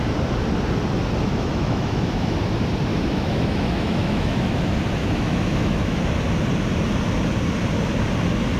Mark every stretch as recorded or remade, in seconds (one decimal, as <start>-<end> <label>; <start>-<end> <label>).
0.0-1.3 recorded; 1.3-2.3 remade; 2.3-2.9 recorded; 2.9-4.6 remade; 4.6-5.0 recorded; 5.0-6.0 remade; 6.0-8.6 recorded

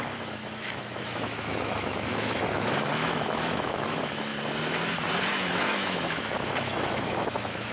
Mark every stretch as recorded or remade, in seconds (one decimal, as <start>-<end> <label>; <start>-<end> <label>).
0.0-4.3 remade; 4.3-5.3 recorded; 5.3-7.7 remade

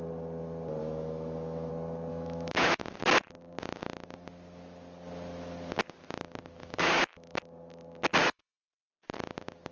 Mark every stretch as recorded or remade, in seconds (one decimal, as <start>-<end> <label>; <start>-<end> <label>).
0.0-0.8 recorded; 0.8-1.7 remade; 1.7-2.1 recorded; 2.1-2.8 remade; 2.8-6.6 recorded; 6.6-7.4 remade; 7.4-8.2 recorded; 8.2-8.9 remade; 8.9-9.7 recorded